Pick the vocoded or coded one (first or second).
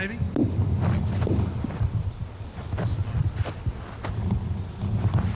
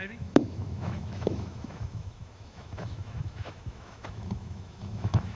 second